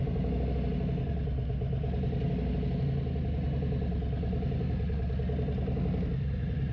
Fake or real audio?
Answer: real